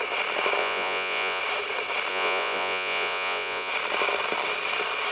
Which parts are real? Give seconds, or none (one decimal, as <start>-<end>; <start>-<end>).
0.0-0.6; 1.4-2.1; 3.7-5.1